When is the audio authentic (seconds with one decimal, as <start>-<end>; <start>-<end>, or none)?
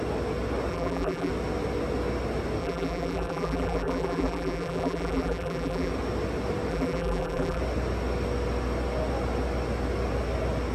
0.0-0.7; 1.3-2.6; 5.9-6.7; 7.6-10.7